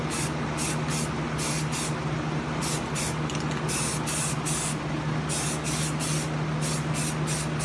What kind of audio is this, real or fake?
real